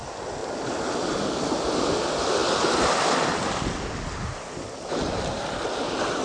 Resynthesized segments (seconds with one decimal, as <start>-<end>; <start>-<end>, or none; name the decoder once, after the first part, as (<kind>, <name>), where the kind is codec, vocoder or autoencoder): none